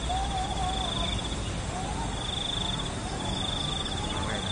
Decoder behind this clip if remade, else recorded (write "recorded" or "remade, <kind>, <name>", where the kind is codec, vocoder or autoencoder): recorded